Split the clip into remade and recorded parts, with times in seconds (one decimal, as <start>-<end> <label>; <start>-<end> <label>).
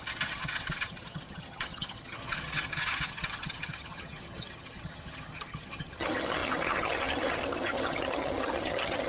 0.0-9.1 remade